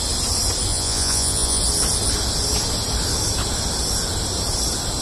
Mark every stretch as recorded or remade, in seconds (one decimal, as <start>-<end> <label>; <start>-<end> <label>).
0.0-0.7 recorded; 0.7-1.6 remade; 1.6-5.0 recorded